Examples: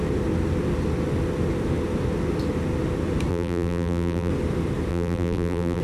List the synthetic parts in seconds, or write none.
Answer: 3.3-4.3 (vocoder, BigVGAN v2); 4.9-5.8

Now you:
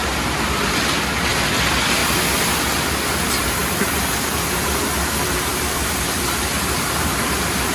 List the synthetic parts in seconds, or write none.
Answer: 3.6-7.7 (vocoder, BigVGAN v2)

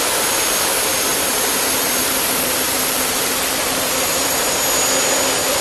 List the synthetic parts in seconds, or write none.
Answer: 1.1-4.5 (vocoder, BigVGAN v2)

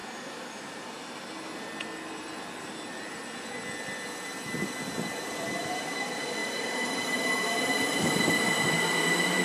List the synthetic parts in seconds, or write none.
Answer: 6.4-7.6 (vocoder, BigVGAN v2)

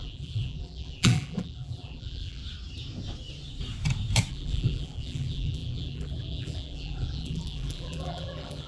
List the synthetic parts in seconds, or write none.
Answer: 0.0-2.4 (vocoder, BigVGAN v2); 4.3-8.7

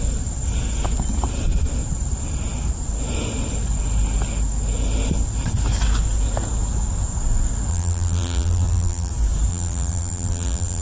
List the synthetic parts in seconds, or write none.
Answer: 7.7-9.1 (vocoder, BigVGAN v2); 9.5-10.8

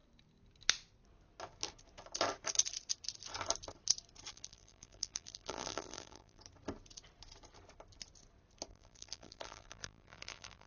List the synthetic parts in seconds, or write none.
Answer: 4.3-6.4 (vocoder, BigVGAN v2); 8.7-10.7